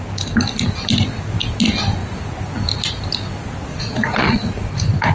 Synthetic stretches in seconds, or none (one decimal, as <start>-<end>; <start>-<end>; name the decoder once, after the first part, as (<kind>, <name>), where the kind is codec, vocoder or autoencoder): 3.7-4.5 (vocoder, Vocos)